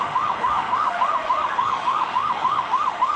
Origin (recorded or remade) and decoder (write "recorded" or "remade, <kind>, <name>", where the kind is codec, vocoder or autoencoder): remade, autoencoder, DAC-VAE